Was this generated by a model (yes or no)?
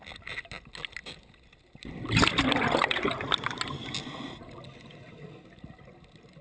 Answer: no